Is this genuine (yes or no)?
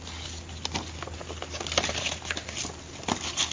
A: yes